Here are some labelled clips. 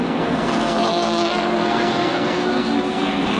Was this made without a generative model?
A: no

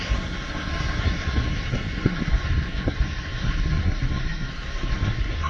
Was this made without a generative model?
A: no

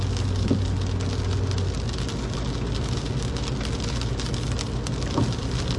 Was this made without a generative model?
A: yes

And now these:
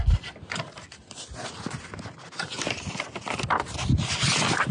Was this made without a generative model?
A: yes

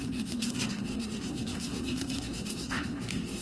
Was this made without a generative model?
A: no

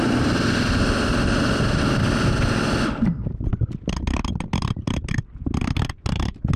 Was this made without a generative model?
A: yes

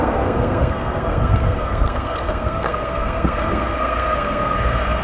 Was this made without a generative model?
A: no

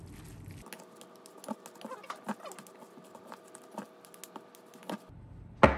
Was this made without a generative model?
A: yes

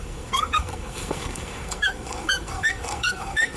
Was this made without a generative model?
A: no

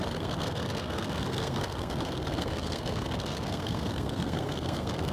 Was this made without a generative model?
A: no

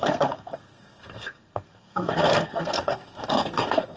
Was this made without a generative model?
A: no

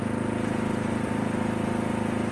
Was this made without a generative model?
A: yes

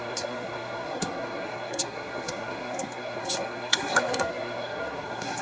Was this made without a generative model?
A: no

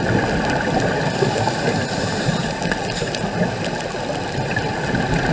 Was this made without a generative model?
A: yes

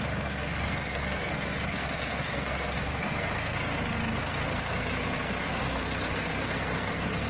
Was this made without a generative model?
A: no